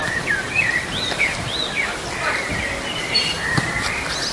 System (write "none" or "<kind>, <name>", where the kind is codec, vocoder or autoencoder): vocoder, BigVGAN v2